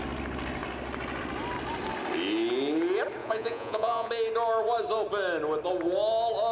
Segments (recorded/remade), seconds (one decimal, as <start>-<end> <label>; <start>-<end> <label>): 0.0-3.2 recorded; 3.2-4.1 remade; 4.1-6.5 recorded